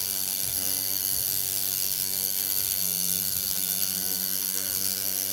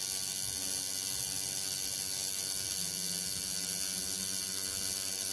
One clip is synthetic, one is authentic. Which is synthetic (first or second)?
first